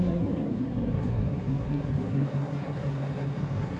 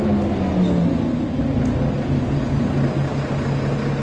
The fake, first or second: first